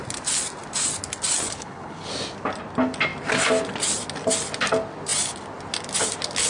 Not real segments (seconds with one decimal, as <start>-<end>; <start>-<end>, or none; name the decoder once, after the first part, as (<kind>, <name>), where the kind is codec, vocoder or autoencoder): 1.4-2.1 (codec, HILCodec)